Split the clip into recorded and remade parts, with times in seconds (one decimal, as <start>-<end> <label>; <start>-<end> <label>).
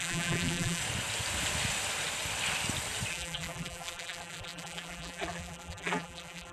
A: 0.0-0.8 remade; 0.8-3.1 recorded; 3.1-6.5 remade